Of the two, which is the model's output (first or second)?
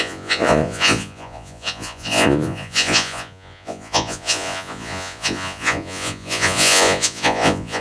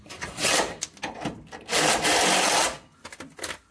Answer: first